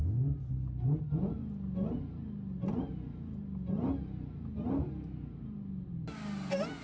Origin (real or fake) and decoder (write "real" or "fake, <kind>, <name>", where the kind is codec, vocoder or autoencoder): real